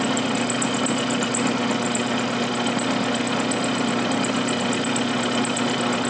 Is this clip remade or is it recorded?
recorded